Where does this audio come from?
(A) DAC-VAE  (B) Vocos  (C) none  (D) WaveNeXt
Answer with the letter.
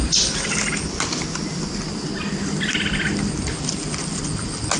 C